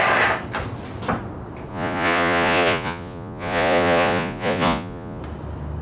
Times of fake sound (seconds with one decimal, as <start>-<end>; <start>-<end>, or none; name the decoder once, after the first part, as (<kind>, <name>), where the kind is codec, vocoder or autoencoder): 1.7-5.2 (vocoder, Vocos)

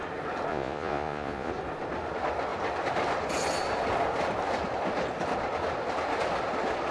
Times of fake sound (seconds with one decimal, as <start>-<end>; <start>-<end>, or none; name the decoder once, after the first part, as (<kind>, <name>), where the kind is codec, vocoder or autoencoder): 0.5-1.5 (vocoder, Vocos)

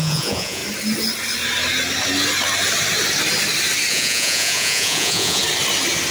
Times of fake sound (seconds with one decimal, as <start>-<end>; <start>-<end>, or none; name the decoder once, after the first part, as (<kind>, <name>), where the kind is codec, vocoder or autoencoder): 0.0-0.6 (vocoder, Vocos); 3.9-5.4

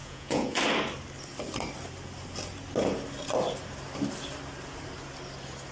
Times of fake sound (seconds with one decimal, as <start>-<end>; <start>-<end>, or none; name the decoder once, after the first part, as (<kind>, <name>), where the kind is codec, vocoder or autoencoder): 0.0-0.6 (vocoder, Vocos)

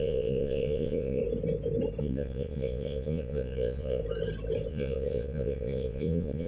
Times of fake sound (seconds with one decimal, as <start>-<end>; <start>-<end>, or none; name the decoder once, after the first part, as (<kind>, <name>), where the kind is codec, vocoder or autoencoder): 0.0-1.2 (vocoder, Vocos); 2.0-4.0; 4.7-6.5

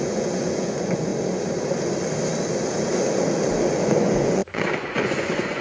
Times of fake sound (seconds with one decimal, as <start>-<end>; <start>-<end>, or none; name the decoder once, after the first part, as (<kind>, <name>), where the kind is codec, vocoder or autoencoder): 0.0-1.1 (vocoder, Vocos); 3.7-5.6